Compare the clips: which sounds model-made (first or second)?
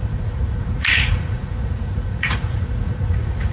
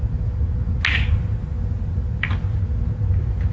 first